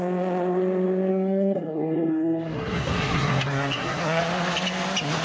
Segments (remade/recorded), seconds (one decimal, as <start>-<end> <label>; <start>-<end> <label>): 0.0-1.1 recorded; 1.1-4.2 remade; 4.2-5.2 recorded